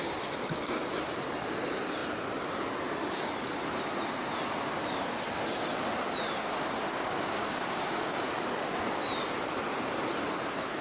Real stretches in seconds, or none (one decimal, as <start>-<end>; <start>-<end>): 0.0-6.9; 8.3-10.8